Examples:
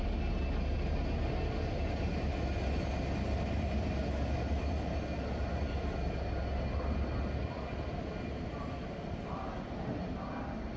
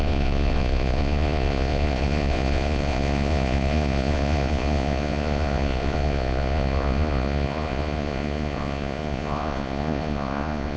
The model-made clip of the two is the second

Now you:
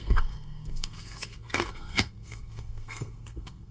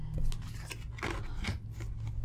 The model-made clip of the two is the first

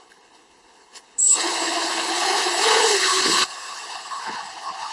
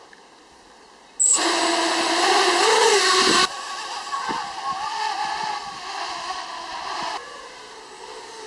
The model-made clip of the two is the first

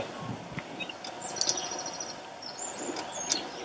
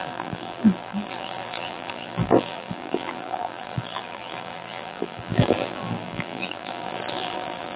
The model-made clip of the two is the second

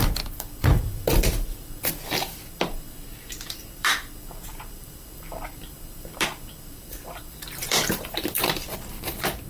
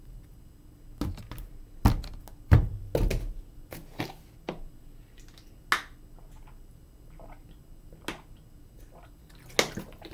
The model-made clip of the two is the first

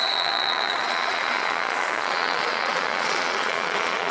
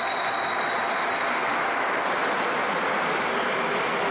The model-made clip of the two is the first